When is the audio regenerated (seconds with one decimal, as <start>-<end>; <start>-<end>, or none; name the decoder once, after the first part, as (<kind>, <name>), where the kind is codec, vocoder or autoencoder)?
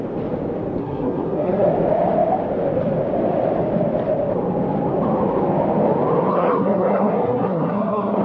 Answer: 0.8-1.7 (codec, SNAC); 6.3-8.2